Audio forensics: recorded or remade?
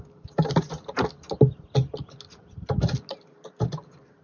recorded